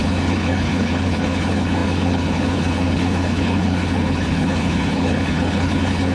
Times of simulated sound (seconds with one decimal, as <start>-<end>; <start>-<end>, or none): 0.0-6.1